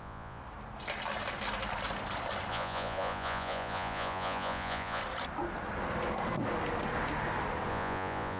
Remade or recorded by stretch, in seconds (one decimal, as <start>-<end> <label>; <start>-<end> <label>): 0.0-0.4 remade; 0.4-2.5 recorded; 2.5-5.0 remade; 5.0-7.7 recorded; 7.7-8.4 remade